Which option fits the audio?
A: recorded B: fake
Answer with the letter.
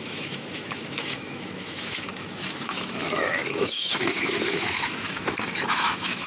B